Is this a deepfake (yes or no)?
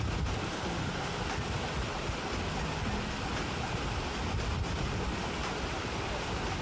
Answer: no